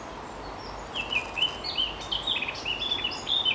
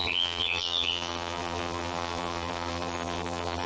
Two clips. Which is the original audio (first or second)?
first